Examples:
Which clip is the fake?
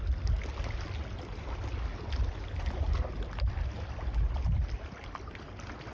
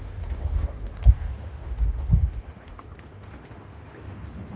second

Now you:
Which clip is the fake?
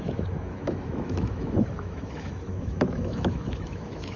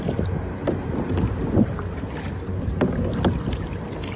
first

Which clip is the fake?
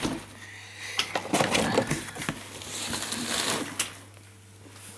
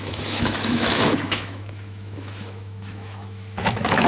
second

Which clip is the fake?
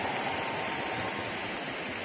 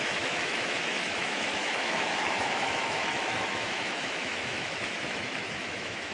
second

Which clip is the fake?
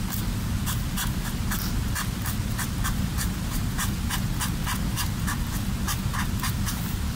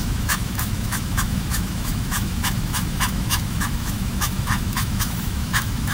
second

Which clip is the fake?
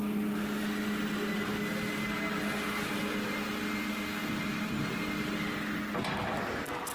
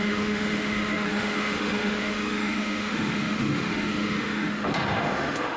second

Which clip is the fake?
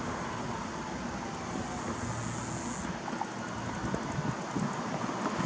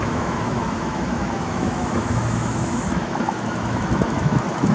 second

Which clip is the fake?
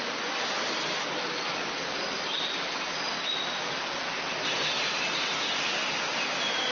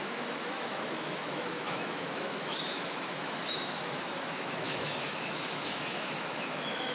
second